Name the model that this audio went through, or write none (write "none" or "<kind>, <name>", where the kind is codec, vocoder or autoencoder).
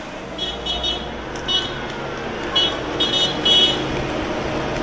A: none